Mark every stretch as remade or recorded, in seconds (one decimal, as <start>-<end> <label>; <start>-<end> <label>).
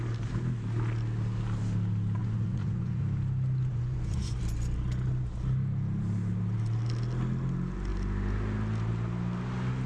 0.0-2.2 recorded; 2.2-3.0 remade; 3.0-3.7 recorded; 3.7-4.4 remade; 4.4-9.9 recorded